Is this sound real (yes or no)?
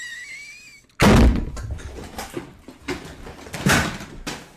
yes